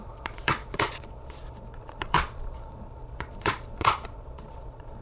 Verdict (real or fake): fake